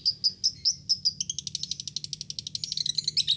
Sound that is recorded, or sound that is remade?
recorded